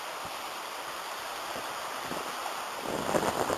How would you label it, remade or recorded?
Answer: remade